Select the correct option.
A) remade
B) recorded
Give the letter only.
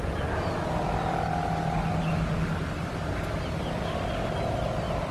B